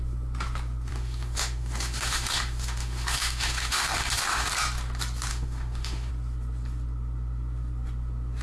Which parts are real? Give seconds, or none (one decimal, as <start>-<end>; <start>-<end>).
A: 0.0-0.9; 4.5-5.3; 6.1-8.4